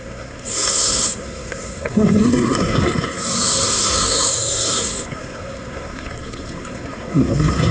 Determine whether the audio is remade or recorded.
remade